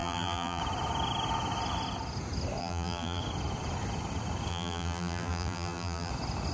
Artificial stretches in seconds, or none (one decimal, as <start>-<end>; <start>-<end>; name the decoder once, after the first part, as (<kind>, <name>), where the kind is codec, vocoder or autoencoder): 0.0-0.6 (vocoder, BigVGAN v2); 2.6-3.2; 4.5-6.1